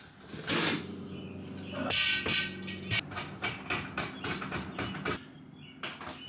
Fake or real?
real